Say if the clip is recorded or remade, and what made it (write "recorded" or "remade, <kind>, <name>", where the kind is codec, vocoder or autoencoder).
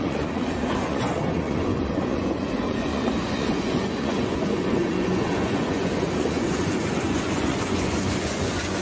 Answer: remade, vocoder, Vocos